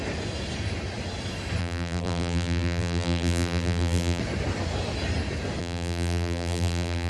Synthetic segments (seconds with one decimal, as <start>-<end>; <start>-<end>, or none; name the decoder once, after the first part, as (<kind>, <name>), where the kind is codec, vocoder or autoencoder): 1.6-4.2 (vocoder, BigVGAN v2); 5.6-7.1